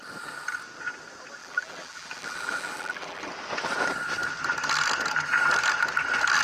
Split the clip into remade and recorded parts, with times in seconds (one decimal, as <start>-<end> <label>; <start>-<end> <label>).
0.0-1.4 recorded; 1.4-3.3 remade; 3.3-6.4 recorded